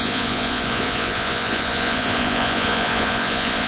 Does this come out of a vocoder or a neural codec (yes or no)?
yes